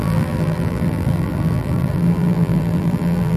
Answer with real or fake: fake